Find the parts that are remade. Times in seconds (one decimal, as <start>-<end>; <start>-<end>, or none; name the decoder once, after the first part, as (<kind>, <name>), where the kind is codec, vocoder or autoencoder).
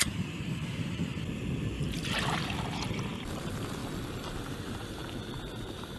0.0-1.1 (vocoder, BigVGAN v2); 3.3-3.8; 4.4-5.0; 5.5-6.0